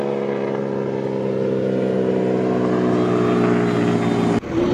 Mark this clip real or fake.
real